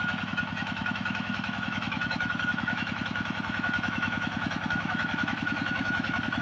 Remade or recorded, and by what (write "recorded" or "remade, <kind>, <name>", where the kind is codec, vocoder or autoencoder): remade, autoencoder, DAC-VAE